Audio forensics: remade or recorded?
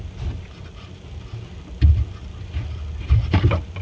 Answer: recorded